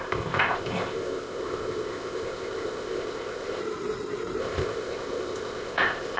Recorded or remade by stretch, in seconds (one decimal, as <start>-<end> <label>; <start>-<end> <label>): 0.0-3.6 remade; 3.6-4.4 recorded; 4.4-6.2 remade